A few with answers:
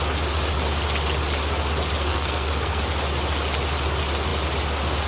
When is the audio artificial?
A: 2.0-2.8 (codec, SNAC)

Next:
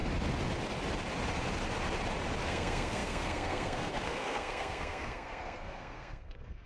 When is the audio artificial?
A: 2.4-6.7 (codec, SNAC)

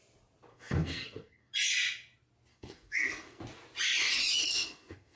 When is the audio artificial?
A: 0.5-1.5 (codec, SNAC); 2.5-3.4; 4.4-5.2